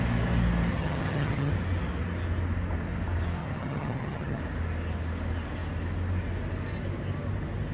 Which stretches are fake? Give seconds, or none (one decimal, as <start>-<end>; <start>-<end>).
0.7-1.5; 3.4-4.4